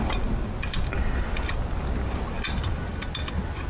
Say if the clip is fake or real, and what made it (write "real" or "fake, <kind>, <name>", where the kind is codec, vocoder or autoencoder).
real